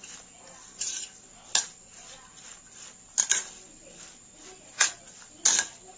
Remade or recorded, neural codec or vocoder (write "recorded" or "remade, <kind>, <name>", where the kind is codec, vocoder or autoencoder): recorded